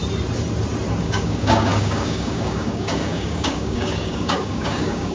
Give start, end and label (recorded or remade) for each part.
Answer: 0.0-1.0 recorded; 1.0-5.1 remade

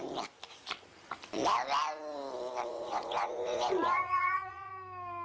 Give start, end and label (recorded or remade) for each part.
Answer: 0.0-2.7 recorded; 2.7-4.7 remade; 4.7-5.2 recorded

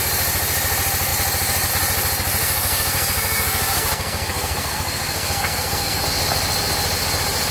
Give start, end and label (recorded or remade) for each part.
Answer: 0.0-2.4 recorded; 2.4-6.0 remade; 6.0-7.5 recorded

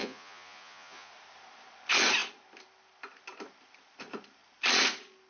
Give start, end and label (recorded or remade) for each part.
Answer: 0.0-1.1 remade; 1.1-5.3 recorded